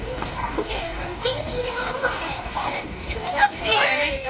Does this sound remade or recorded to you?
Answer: remade